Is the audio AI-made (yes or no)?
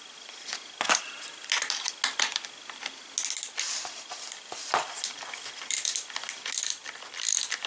no